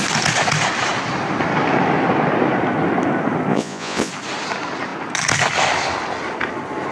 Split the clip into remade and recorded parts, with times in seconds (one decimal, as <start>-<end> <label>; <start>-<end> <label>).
0.0-3.5 recorded; 3.5-4.1 remade; 4.1-6.9 recorded